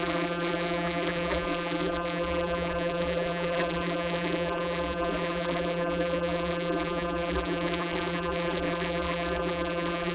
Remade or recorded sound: remade